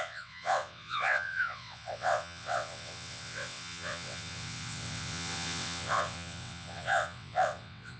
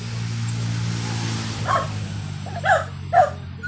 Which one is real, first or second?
second